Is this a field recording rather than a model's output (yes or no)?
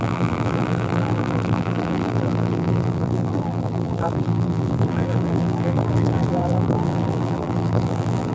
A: no